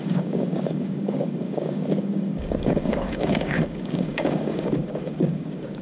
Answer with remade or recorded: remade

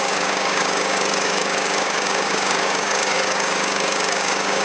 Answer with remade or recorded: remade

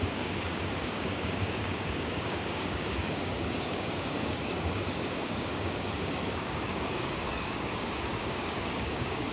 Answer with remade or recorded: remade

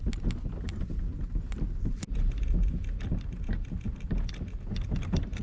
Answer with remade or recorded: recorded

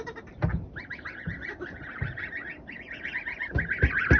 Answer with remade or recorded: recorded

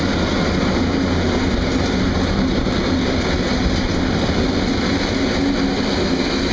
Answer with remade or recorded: recorded